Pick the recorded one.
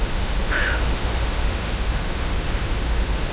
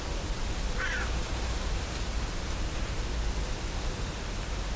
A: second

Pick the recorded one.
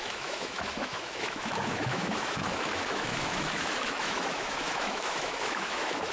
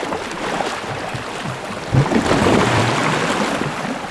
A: second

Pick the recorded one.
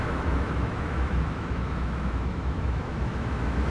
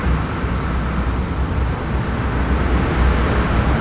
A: second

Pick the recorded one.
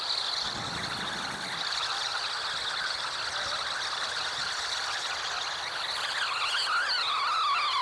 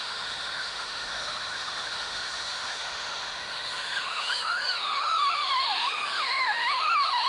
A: first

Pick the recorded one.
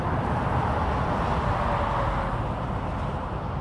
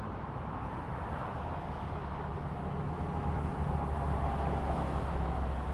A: first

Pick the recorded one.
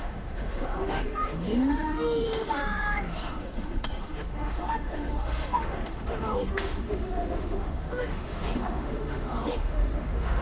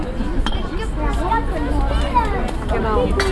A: second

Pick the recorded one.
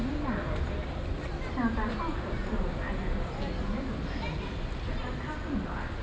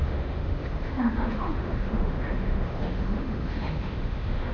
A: first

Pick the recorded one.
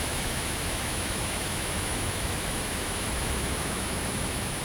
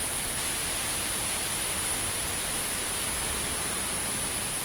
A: second